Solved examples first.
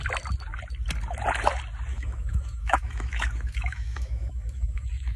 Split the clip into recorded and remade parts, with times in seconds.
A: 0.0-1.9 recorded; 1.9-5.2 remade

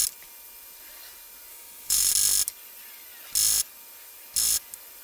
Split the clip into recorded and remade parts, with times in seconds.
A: 0.0-1.5 recorded; 1.5-2.1 remade; 2.1-5.0 recorded

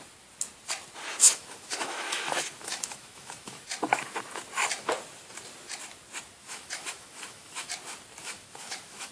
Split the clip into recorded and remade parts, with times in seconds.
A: 0.0-1.2 recorded; 1.2-3.7 remade; 3.7-6.4 recorded; 6.4-7.7 remade; 7.7-8.2 recorded; 8.2-9.1 remade

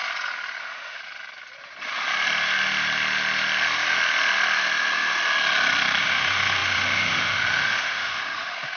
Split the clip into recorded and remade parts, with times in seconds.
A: 0.0-0.6 recorded; 0.6-1.0 remade; 1.0-6.0 recorded; 6.0-8.8 remade